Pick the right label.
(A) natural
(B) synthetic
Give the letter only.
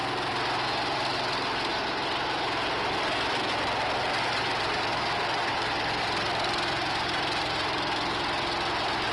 A